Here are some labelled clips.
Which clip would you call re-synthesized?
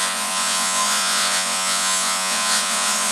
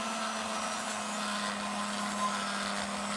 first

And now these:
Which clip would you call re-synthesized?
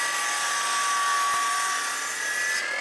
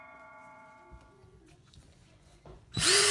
second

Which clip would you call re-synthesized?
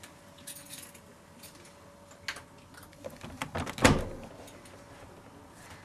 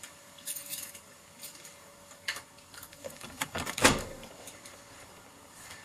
second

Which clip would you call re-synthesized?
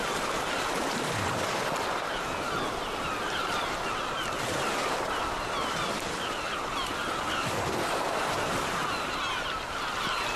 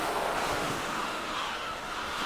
second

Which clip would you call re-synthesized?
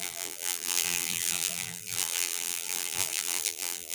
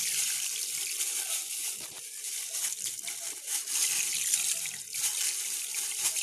first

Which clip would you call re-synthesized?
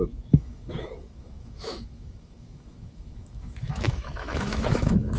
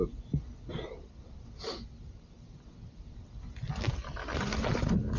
first